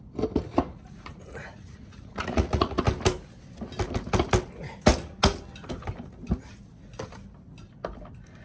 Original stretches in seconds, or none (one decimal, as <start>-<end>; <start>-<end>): 0.0-0.7; 2.8-8.4

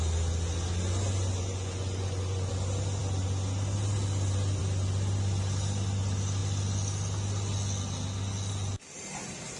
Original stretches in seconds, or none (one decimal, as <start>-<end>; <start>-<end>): 0.0-1.4; 2.5-9.6

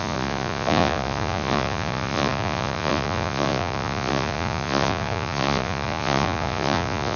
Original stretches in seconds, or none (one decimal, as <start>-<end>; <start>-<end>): none

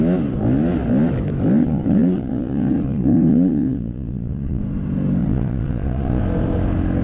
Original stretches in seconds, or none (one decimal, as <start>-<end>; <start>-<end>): 0.0-1.6; 4.6-5.2; 6.2-7.0